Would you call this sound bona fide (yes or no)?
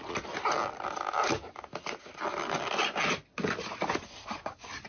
yes